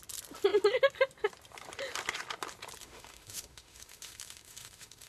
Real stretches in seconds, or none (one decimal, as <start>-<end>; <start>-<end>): 0.0-2.8